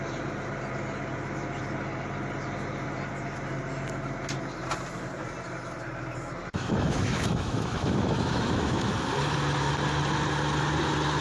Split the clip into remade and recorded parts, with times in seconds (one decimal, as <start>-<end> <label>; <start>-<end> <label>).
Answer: 0.0-6.4 recorded; 6.4-8.9 remade; 8.9-11.2 recorded